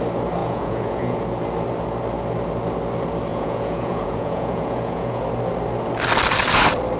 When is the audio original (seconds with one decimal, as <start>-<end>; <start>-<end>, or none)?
0.0-0.4; 1.2-3.3; 5.2-7.0